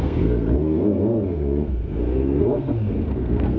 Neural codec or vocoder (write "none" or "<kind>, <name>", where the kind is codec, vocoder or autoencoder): codec, SNAC